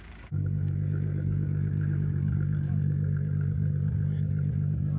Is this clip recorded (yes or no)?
no